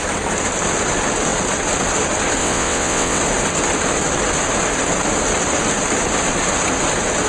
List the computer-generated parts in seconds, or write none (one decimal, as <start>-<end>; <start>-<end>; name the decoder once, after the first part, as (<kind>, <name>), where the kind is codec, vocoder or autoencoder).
2.4-3.2 (vocoder, WaveNeXt)